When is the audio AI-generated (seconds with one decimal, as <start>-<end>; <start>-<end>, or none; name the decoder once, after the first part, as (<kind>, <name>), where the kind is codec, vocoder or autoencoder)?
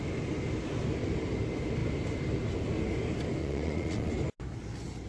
3.4-4.1 (vocoder, Vocos)